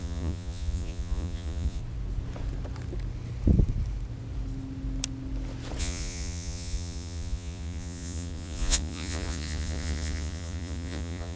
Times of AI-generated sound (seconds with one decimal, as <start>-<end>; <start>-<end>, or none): 0.0-1.8; 5.8-11.4